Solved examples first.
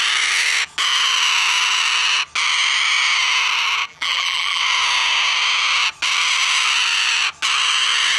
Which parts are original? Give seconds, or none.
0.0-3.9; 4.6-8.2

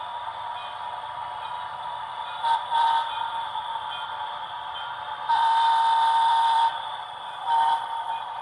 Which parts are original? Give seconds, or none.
none

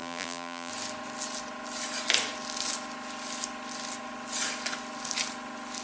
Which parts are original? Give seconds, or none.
0.7-5.8

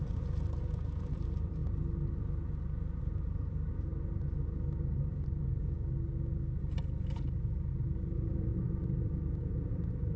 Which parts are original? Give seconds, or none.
1.6-3.0; 3.9-7.7; 8.5-9.7

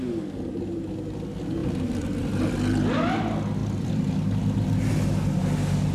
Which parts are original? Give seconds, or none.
0.0-1.6; 2.5-3.6; 5.4-5.9

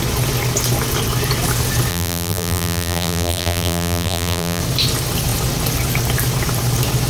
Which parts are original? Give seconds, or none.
0.0-1.9; 4.6-7.1

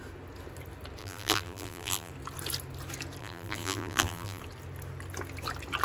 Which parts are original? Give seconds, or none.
0.0-1.0; 2.1-3.2; 4.4-5.8

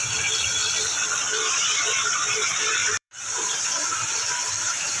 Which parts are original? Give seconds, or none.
0.6-1.2